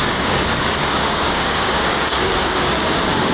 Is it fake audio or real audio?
fake